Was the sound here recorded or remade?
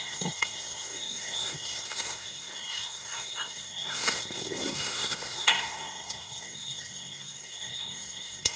remade